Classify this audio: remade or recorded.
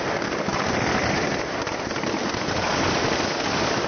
recorded